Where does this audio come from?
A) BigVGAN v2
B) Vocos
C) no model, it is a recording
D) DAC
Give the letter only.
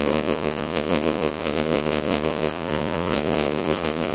B